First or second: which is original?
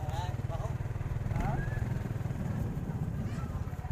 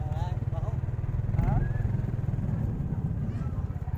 second